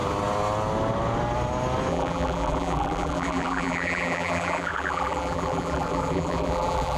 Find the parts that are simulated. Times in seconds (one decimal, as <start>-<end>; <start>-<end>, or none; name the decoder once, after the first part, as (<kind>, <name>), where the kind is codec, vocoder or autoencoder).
1.9-7.0 (vocoder, BigVGAN v2)